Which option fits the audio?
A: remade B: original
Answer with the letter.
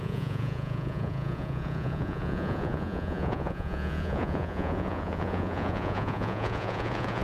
A